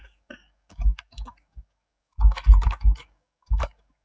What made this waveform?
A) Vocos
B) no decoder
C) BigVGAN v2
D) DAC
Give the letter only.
D